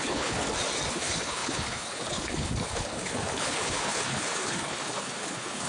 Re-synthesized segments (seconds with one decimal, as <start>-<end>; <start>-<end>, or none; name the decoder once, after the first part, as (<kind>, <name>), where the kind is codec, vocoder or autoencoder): 0.0-0.4 (codec, HILCodec); 0.9-5.7